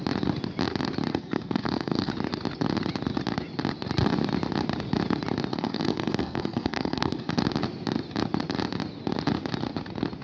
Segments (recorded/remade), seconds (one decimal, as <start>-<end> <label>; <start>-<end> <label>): 0.0-1.1 recorded; 1.1-2.1 remade; 2.1-5.5 recorded; 5.5-7.4 remade; 7.4-10.2 recorded